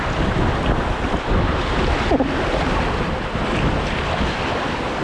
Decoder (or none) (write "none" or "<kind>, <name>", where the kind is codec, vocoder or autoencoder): none